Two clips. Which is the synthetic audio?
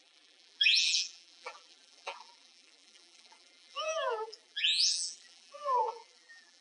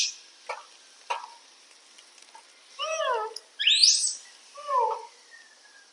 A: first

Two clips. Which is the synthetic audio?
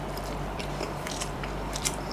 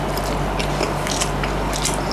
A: first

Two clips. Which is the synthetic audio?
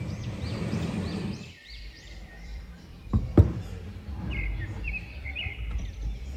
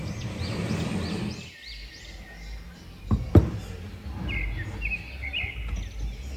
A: first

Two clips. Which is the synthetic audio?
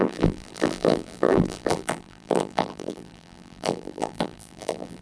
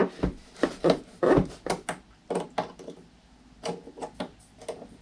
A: first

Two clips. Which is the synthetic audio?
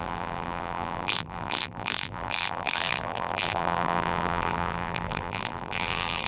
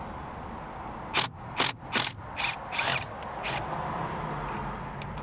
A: first